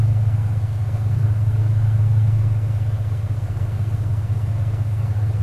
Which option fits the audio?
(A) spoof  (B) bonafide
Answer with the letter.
A